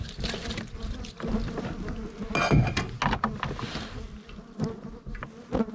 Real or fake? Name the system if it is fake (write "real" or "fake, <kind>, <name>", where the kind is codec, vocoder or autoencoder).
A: real